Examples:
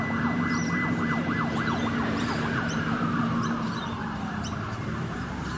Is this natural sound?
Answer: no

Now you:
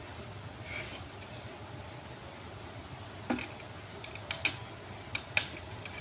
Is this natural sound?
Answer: yes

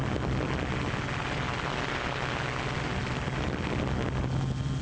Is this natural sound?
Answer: yes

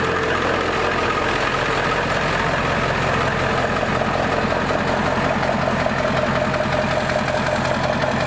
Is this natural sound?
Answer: yes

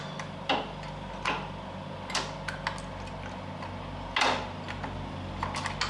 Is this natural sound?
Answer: yes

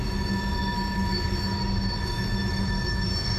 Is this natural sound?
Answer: no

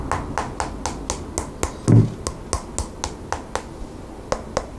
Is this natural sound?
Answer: yes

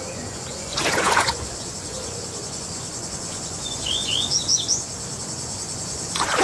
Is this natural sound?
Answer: no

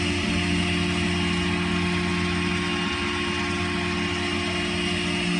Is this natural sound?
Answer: yes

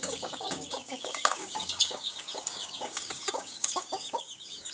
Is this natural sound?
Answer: no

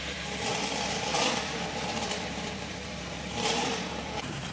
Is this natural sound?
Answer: no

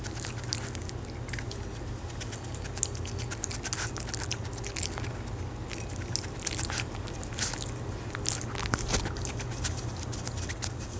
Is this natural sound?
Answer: yes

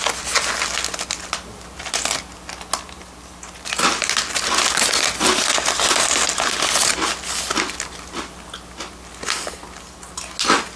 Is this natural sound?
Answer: yes